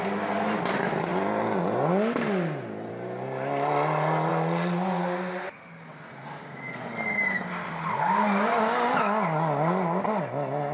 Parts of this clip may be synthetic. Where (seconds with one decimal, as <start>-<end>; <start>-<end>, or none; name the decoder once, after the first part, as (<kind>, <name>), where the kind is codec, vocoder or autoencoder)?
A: none